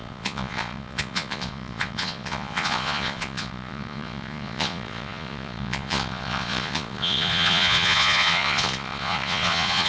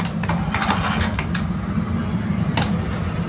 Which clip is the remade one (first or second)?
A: first